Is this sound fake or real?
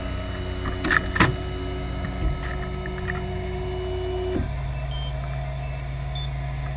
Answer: real